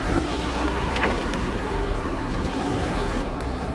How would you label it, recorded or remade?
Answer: remade